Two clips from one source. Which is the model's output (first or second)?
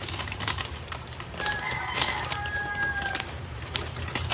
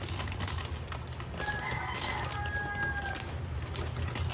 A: first